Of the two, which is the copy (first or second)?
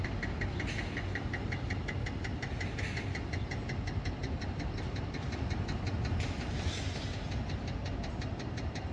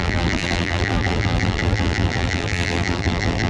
second